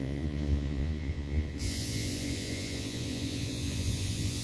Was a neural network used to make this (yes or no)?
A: yes